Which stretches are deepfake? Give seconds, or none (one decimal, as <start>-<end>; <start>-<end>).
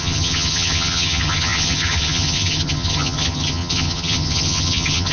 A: 0.0-5.1